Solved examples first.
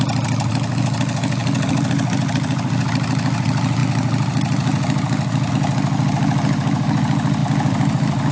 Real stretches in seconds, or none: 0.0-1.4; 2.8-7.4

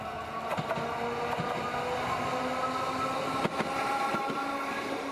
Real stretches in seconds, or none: 0.0-5.1

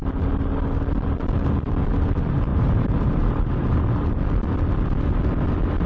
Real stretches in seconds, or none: 0.0-2.5; 3.8-5.9

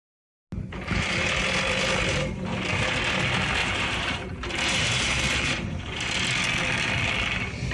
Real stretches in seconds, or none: 0.0-3.6; 6.3-7.7

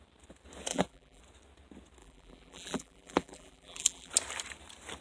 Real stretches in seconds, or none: 0.0-0.7; 1.2-2.0; 4.1-5.0

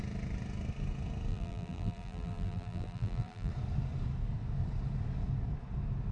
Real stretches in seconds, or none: 0.0-1.3; 3.5-6.1

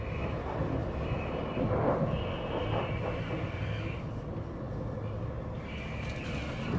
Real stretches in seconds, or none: 0.0-0.8; 2.0-2.6; 4.7-6.8

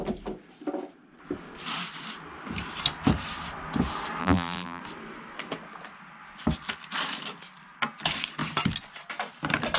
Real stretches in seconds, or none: 0.0-4.2; 4.8-9.8